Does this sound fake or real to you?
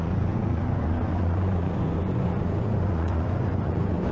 fake